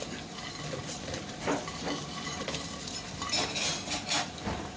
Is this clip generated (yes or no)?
no